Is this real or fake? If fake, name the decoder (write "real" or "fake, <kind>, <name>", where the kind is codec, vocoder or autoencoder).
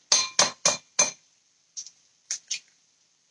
real